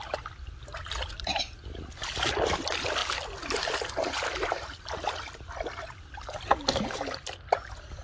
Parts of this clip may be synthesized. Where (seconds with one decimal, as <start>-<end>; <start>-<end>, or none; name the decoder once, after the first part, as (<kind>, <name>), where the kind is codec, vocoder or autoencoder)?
none